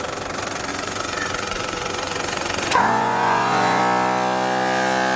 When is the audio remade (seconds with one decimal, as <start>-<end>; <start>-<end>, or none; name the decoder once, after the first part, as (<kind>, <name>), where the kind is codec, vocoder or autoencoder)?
0.7-3.8 (vocoder, Vocos)